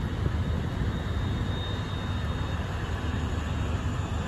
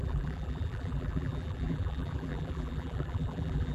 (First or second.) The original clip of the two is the first